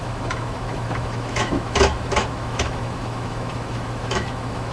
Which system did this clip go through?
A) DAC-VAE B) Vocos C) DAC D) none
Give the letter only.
A